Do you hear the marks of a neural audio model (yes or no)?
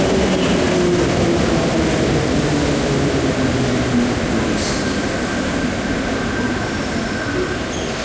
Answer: no